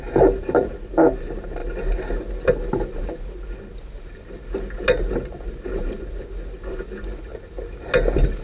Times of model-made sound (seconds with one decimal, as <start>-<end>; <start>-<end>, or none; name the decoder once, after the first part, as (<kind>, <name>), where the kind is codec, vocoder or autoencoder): none